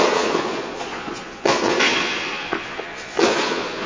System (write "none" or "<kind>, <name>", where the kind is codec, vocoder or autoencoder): vocoder, Vocos